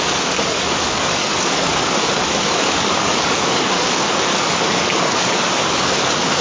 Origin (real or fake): fake